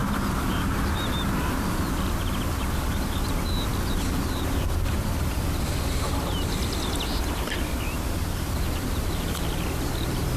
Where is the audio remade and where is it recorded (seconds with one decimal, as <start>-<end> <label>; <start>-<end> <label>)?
0.0-1.7 recorded; 1.7-3.7 remade; 3.7-4.2 recorded; 4.2-10.4 remade